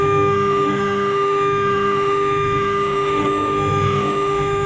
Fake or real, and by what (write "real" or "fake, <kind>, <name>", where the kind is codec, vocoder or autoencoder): fake, autoencoder, DAC-VAE